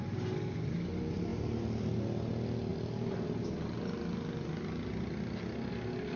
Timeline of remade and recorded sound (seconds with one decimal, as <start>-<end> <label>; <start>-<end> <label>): 0.0-6.2 recorded